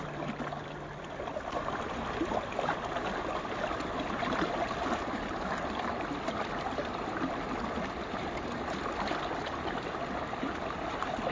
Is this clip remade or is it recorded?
recorded